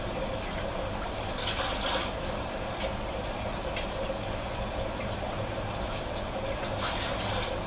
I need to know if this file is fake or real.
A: real